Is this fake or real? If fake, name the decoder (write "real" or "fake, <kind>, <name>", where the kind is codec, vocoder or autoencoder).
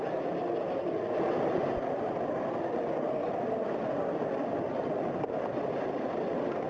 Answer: real